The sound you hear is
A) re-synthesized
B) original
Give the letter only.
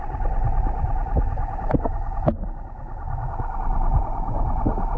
B